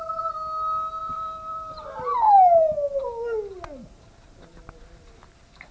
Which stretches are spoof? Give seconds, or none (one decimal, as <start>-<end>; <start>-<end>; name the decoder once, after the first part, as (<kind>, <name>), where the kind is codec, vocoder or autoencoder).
1.0-3.0 (vocoder, BigVGAN v2)